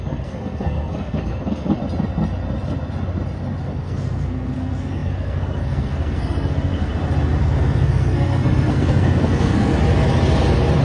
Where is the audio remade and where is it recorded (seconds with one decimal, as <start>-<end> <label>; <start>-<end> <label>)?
0.0-1.8 remade; 1.8-3.6 recorded; 3.6-6.9 remade; 6.9-7.4 recorded; 7.4-9.7 remade; 9.7-10.8 recorded